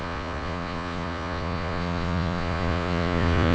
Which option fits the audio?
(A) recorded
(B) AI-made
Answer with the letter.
B